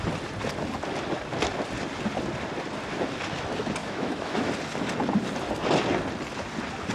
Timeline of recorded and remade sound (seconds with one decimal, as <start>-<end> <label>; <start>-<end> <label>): 0.0-3.8 recorded; 3.8-4.5 remade; 4.5-6.9 recorded